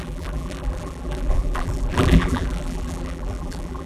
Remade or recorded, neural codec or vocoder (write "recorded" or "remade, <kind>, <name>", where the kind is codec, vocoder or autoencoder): remade, vocoder, BigVGAN v2